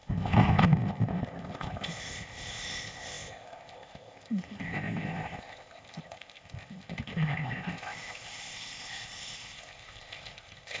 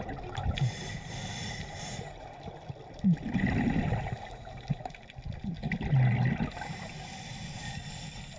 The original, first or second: second